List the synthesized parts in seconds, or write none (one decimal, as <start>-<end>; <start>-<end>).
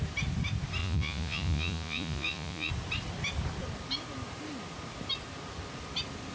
0.8-2.7